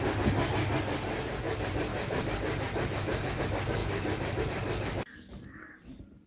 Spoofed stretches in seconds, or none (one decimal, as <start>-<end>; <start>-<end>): none